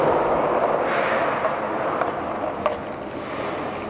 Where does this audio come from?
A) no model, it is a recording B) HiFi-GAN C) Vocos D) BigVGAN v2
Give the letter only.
A